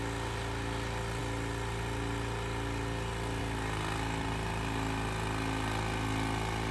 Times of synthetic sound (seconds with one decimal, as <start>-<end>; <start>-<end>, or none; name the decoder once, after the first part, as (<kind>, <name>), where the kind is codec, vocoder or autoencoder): none